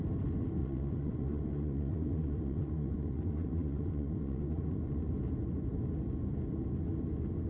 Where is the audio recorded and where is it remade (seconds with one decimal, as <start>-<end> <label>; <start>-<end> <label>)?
0.0-0.6 recorded; 0.6-5.1 remade; 5.1-7.5 recorded